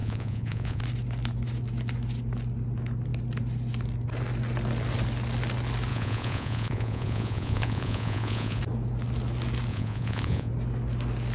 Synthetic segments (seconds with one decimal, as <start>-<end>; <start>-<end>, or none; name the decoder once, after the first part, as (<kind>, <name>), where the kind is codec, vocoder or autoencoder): 0.0-0.8 (vocoder, Vocos); 5.9-8.6; 9.7-10.5